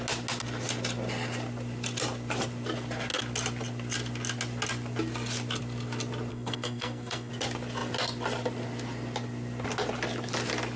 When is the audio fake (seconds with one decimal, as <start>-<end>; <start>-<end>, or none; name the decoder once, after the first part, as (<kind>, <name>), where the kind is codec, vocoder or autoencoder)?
6.3-7.3 (codec, SNAC)